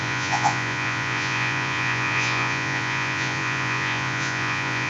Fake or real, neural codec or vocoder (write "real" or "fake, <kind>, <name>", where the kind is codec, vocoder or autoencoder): fake, vocoder, Vocos